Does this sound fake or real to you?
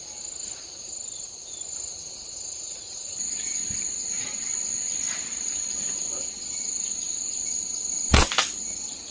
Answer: real